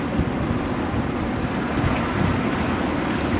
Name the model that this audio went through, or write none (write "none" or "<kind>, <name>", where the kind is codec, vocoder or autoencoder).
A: none